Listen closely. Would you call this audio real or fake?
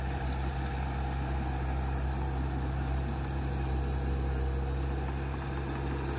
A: real